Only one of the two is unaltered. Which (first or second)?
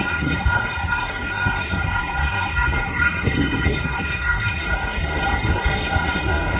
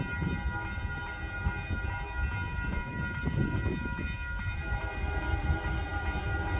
second